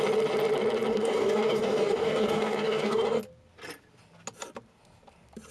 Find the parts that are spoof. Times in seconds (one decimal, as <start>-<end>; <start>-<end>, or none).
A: 0.9-3.2